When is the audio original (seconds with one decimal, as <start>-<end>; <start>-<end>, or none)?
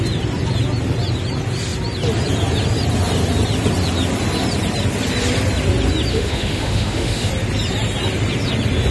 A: 0.0-6.1; 7.3-8.9